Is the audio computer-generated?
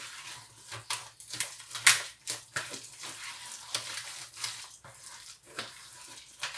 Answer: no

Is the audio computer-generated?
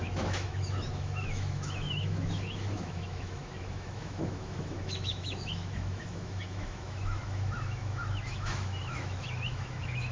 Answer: yes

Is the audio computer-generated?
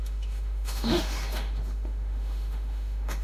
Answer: yes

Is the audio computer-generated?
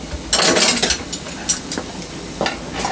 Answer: no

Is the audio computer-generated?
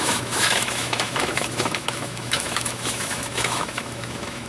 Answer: yes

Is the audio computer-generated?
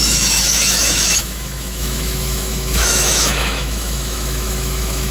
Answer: yes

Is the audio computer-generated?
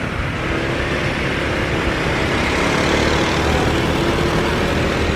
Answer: no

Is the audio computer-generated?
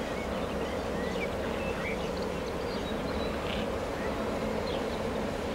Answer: no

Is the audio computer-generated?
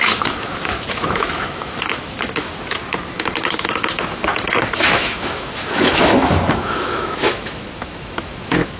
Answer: yes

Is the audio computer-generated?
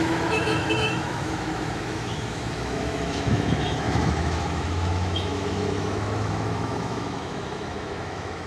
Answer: yes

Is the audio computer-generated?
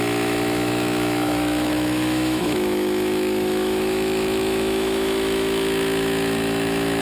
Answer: yes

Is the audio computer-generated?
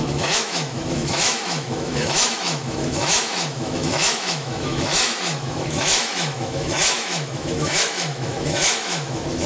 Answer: yes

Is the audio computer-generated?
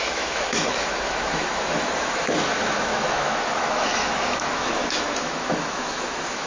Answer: yes